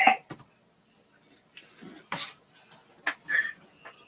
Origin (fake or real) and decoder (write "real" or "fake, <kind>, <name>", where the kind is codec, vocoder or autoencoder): real